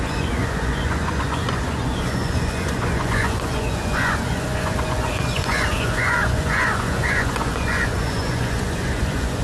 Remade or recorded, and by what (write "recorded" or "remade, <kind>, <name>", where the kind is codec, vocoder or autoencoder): remade, vocoder, Vocos